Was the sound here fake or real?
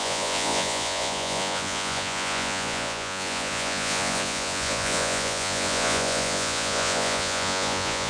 fake